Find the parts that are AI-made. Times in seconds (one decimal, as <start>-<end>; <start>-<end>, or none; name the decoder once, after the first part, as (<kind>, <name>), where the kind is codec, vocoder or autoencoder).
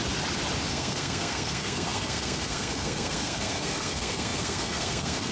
0.7-5.3 (codec, SNAC)